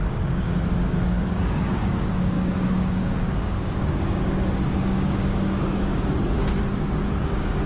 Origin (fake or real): fake